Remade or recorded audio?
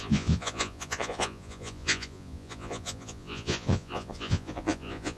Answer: remade